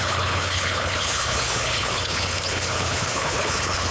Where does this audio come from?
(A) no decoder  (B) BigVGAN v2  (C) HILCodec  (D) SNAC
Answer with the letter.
C